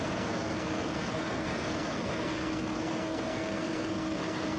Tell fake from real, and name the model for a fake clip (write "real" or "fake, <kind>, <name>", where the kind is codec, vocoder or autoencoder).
fake, codec, SNAC